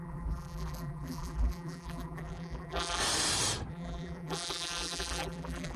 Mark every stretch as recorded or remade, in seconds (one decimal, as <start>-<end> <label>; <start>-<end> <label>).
0.0-3.0 remade; 3.0-3.7 recorded; 3.7-5.8 remade